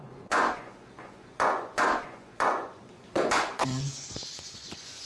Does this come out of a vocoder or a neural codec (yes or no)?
yes